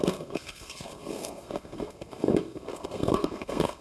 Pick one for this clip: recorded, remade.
remade